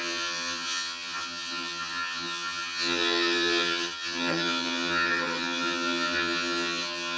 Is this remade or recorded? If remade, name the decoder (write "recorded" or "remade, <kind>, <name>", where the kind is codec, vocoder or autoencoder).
remade, vocoder, HiFi-GAN